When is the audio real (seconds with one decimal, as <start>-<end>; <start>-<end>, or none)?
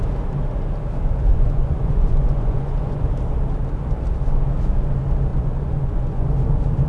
0.0-1.3; 3.1-5.3; 6.3-6.9